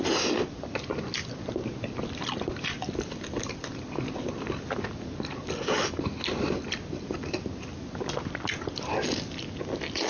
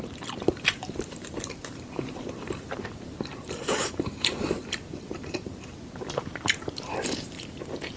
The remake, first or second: second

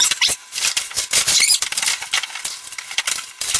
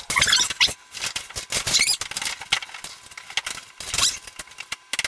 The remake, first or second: first